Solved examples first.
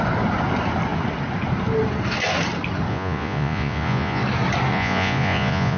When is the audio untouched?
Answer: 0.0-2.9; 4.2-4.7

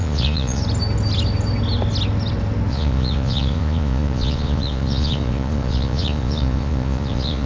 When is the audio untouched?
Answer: 0.6-2.7

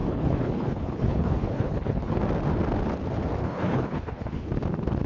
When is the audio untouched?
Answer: 2.2-3.4; 4.5-5.1

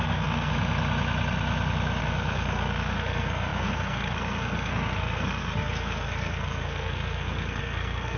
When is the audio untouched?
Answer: 0.5-2.0

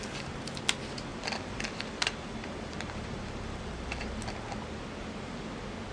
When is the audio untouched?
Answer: 0.0-1.1; 4.1-5.9